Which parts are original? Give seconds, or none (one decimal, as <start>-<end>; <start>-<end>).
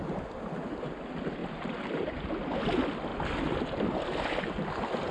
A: 0.0-1.4; 2.3-5.1